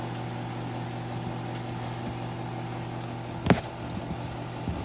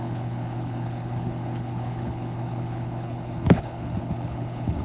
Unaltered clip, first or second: first